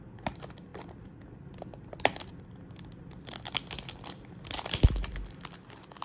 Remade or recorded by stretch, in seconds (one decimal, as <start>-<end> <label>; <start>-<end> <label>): 0.0-6.0 recorded